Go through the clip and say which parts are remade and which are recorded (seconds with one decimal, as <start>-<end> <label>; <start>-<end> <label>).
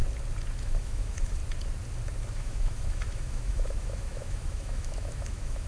0.0-0.6 recorded; 0.6-1.4 remade; 1.4-2.3 recorded; 2.3-5.7 remade